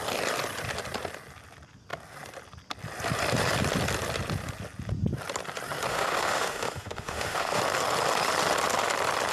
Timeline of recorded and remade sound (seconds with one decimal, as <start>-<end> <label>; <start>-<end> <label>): 0.0-5.9 recorded; 5.9-7.6 remade; 7.6-9.3 recorded